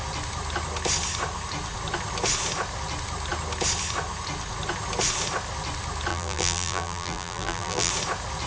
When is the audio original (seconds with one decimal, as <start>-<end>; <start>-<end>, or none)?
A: 0.0-6.1; 7.9-8.5